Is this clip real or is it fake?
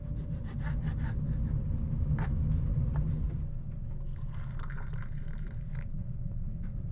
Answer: fake